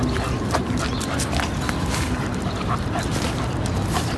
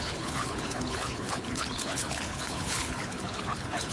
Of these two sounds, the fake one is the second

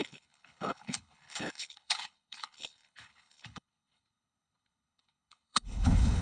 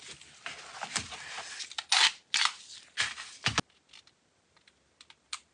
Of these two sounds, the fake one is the first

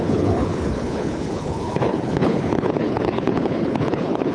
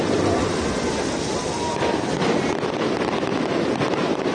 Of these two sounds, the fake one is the first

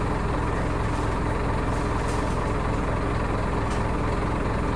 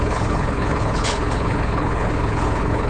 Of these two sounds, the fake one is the second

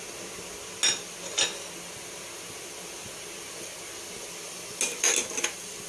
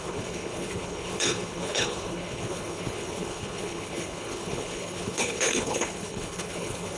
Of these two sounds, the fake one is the second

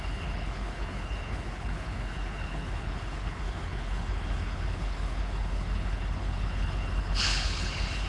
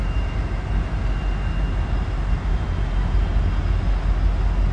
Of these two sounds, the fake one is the first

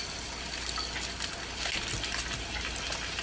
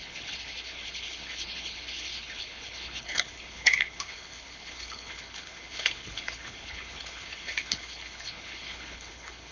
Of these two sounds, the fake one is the second